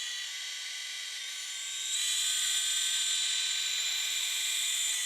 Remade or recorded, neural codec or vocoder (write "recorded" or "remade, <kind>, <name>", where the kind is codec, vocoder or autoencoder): remade, vocoder, BigVGAN v2